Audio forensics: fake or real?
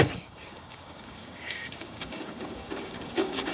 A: fake